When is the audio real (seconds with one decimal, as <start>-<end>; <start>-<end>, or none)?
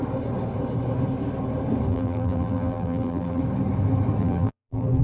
0.0-1.9; 3.4-4.2